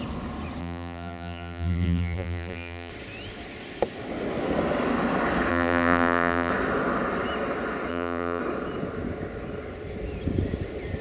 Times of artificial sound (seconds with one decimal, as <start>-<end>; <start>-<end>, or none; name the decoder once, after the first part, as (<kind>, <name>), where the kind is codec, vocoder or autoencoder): 0.6-2.9 (vocoder, BigVGAN v2); 5.5-6.5; 7.9-8.4